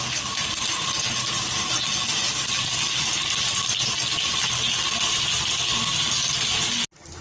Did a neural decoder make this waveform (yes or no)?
no